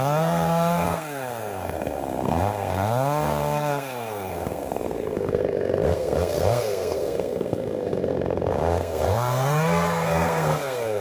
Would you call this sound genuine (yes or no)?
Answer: no